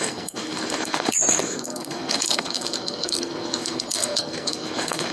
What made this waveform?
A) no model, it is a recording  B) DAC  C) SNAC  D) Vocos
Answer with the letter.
C